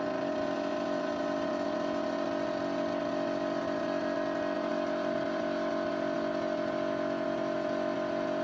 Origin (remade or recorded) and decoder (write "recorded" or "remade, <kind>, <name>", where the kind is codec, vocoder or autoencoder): recorded